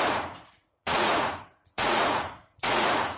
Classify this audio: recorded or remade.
remade